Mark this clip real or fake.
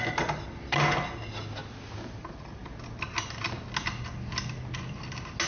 real